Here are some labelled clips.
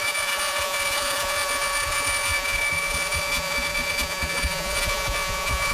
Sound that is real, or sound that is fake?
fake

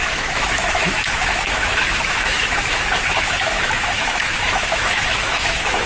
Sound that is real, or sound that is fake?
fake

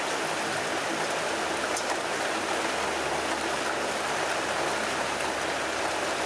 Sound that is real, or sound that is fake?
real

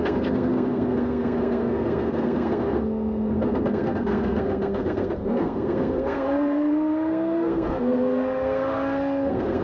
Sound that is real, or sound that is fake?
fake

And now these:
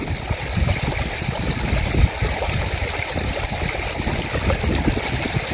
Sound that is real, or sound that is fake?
real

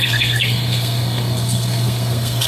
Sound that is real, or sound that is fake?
fake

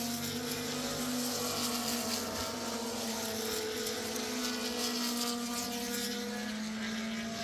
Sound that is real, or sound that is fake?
real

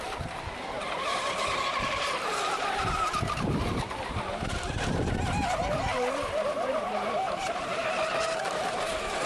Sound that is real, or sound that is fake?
fake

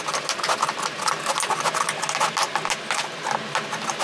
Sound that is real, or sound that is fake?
real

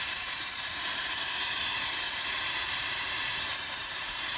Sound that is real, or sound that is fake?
fake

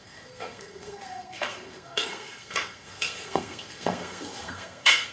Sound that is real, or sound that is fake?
fake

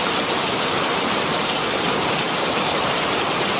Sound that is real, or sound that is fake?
fake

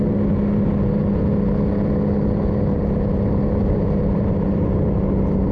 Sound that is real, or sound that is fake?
real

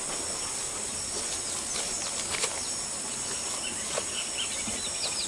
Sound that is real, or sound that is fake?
real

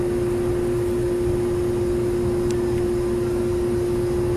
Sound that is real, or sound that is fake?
real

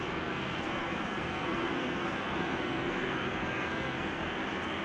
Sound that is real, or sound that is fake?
fake